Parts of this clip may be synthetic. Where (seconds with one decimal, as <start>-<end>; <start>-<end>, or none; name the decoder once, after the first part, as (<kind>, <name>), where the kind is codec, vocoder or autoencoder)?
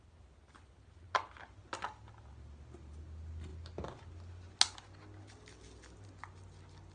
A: none